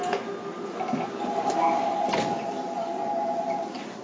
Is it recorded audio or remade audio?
recorded